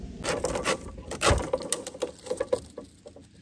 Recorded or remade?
recorded